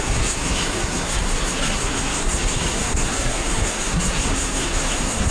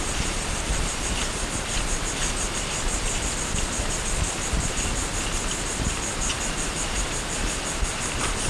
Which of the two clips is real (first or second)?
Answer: second